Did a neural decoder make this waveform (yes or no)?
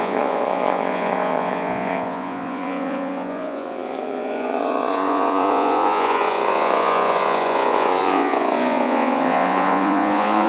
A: yes